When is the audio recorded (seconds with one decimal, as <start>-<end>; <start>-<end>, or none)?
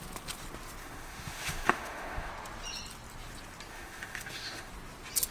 0.0-0.8; 2.3-3.7; 4.7-5.3